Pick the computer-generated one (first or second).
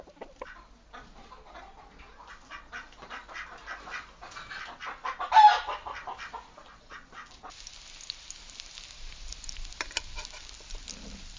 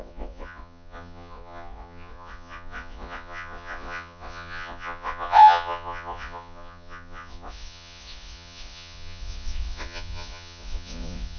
second